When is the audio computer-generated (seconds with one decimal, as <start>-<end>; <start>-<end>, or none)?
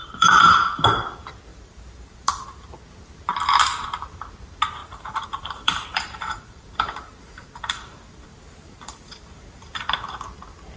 0.0-0.7; 1.5-2.6; 4.8-9.6